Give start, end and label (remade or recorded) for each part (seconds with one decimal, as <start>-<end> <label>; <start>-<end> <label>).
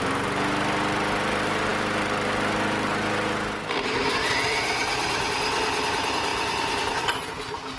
0.0-7.8 recorded